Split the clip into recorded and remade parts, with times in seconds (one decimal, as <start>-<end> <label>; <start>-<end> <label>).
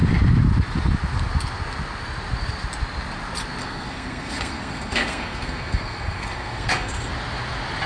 0.0-3.6 recorded; 3.6-7.1 remade; 7.1-7.9 recorded